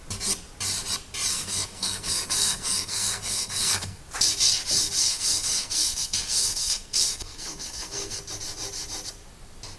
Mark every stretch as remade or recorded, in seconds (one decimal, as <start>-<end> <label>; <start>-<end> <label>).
0.0-1.3 recorded; 1.3-4.0 remade; 4.0-5.0 recorded; 5.0-8.2 remade; 8.2-9.8 recorded